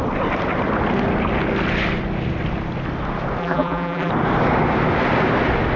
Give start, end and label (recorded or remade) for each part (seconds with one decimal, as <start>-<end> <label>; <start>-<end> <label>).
0.0-3.4 recorded; 3.4-4.1 remade; 4.1-5.8 recorded